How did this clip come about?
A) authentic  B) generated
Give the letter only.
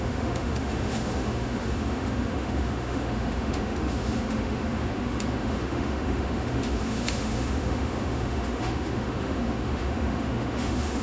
B